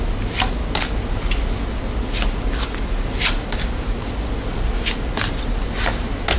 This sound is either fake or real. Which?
real